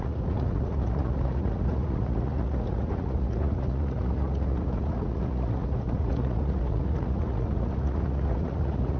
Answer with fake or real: fake